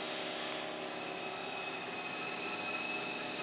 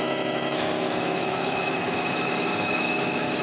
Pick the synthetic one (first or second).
second